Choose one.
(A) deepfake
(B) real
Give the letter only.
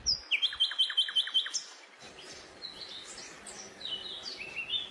B